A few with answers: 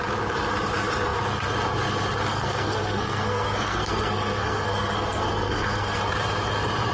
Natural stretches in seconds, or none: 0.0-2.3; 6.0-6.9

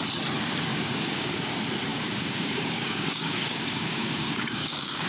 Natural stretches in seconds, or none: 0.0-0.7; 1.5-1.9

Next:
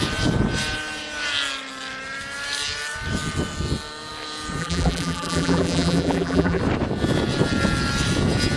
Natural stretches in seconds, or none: 0.0-4.6; 6.6-8.6